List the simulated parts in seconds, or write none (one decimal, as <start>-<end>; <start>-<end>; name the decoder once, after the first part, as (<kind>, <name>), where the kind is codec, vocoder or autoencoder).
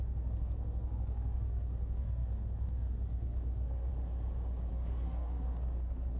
0.0-3.9 (codec, SNAC); 4.7-6.2